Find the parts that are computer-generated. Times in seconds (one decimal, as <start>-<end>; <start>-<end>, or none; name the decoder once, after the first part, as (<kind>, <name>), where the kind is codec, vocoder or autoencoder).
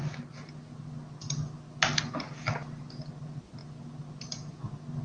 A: none